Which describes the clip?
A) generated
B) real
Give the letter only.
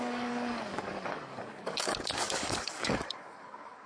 A